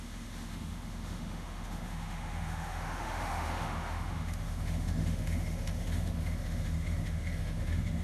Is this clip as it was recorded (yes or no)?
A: no